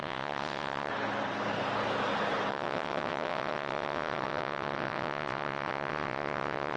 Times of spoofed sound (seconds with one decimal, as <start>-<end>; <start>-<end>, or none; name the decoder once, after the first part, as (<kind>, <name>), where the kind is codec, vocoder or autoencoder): 0.0-0.9 (vocoder, WaveNeXt); 2.5-6.8

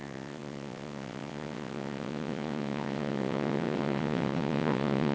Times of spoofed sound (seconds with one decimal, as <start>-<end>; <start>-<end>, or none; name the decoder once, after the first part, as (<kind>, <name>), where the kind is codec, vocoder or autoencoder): 0.0-5.1 (vocoder, WaveNeXt)

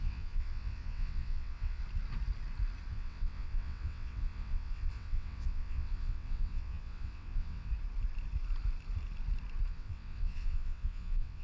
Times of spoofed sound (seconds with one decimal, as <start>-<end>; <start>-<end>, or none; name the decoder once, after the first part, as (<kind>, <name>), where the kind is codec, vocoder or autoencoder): 0.0-1.8 (vocoder, WaveNeXt); 2.9-7.7; 9.7-11.4